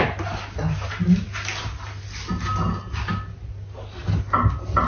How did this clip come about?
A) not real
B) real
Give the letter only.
B